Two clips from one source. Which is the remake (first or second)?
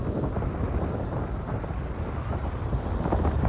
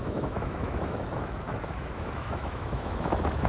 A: second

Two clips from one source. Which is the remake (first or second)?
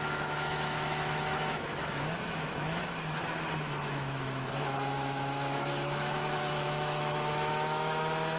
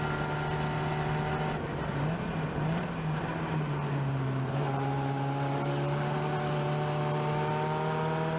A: first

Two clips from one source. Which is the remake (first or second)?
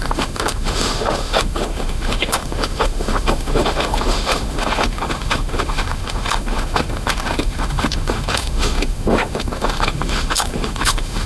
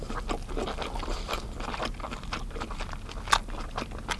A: first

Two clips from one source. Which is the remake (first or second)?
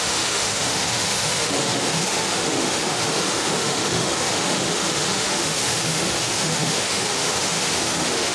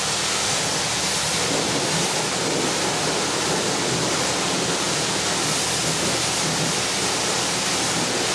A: first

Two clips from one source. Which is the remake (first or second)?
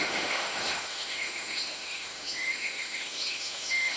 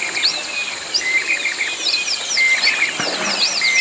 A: first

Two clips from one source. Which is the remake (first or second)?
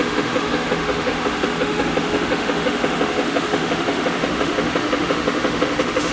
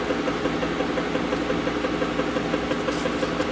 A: first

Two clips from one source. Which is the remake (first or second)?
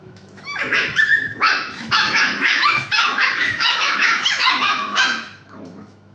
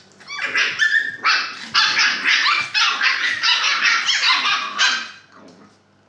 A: first